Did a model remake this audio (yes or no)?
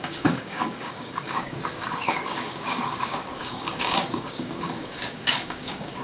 yes